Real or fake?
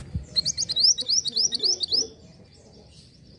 real